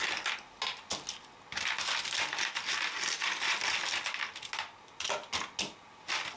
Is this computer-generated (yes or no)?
no